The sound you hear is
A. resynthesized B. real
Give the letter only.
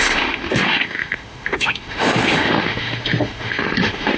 A